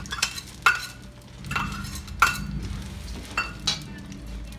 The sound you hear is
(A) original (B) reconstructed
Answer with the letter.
A